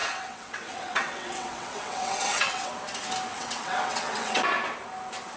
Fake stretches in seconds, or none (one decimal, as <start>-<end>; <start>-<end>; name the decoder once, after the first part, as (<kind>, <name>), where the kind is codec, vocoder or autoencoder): 0.0-2.7 (vocoder, WaveNeXt); 3.3-4.4